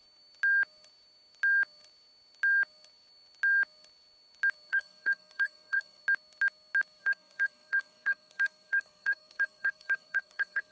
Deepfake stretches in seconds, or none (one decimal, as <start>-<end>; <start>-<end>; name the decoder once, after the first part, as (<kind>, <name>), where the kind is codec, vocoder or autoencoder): 4.7-6.0 (codec, SNAC); 7.0-10.7